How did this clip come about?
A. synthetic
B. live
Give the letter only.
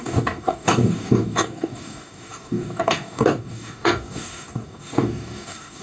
A